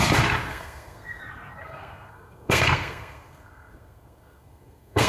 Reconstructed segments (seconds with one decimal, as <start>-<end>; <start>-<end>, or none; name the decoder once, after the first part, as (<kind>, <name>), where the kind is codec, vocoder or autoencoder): 0.5-1.2 (codec, SNAC); 1.6-5.1